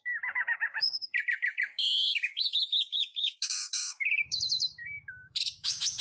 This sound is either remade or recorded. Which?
remade